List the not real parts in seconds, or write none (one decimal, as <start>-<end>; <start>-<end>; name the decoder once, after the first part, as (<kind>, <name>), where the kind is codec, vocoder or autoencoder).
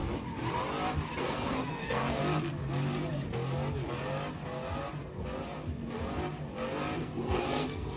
1.2-2.2 (codec, SNAC); 7.0-8.0